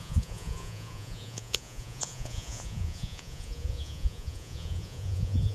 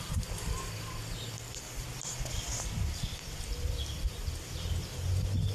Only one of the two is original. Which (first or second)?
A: second